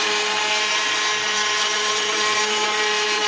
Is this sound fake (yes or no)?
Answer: yes